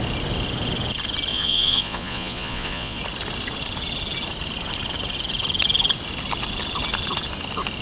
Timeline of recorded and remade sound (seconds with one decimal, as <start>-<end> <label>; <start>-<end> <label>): 0.0-1.3 recorded; 1.3-3.0 remade; 3.0-7.8 recorded